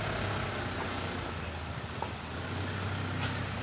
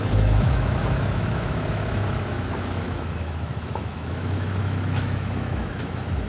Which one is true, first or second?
first